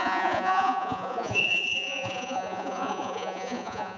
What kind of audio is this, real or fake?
fake